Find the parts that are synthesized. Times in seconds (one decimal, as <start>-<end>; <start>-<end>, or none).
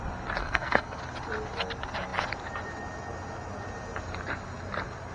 0.4-1.0